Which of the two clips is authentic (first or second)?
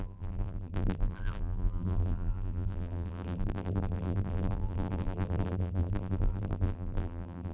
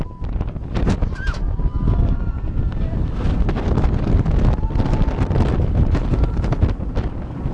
second